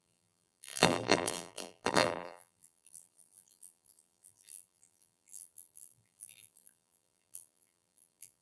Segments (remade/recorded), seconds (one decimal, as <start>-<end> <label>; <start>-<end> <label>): 0.0-8.4 remade

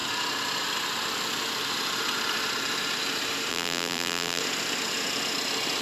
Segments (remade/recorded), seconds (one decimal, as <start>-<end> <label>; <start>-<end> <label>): 0.0-3.5 recorded; 3.5-4.4 remade; 4.4-5.8 recorded

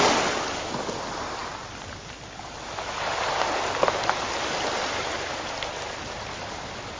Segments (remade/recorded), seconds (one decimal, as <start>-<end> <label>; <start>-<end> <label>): 0.0-4.8 recorded; 4.8-5.7 remade; 5.7-7.0 recorded